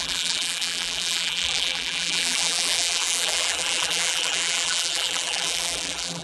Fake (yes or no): yes